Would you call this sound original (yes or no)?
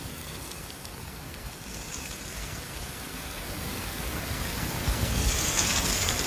no